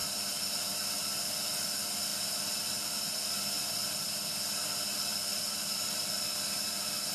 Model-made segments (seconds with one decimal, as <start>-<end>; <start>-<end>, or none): none